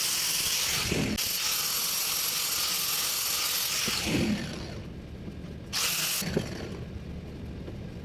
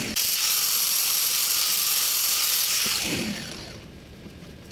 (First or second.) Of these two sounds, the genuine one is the first